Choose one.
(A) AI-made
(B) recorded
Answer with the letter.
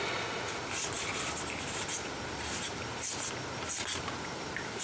A